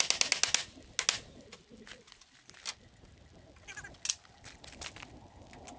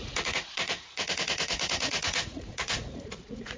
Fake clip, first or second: second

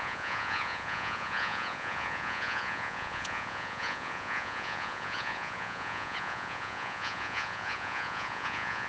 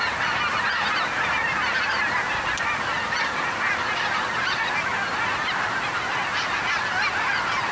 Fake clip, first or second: first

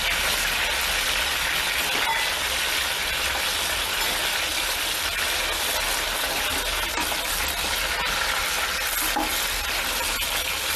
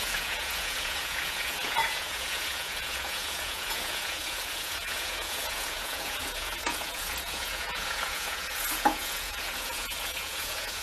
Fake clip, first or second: second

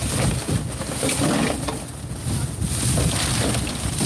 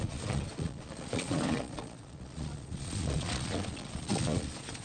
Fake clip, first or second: second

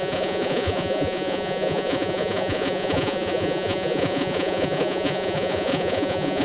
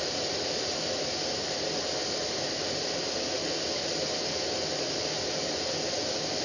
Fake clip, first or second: first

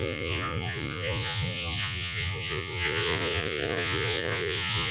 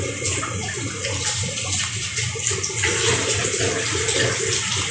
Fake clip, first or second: first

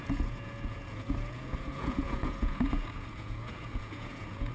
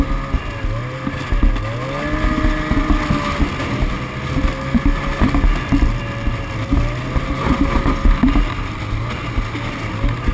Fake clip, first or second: first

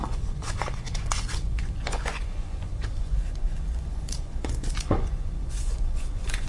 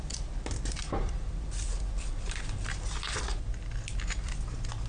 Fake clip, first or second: first